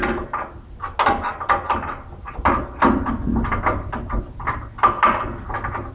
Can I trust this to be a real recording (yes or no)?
yes